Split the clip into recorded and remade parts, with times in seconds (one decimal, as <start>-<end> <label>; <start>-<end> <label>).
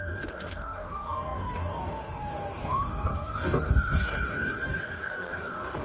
0.0-5.8 remade